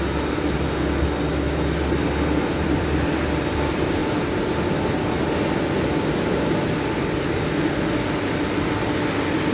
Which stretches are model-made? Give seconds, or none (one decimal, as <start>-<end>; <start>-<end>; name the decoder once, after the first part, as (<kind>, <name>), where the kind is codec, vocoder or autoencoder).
4.0-4.8 (vocoder, BigVGAN v2)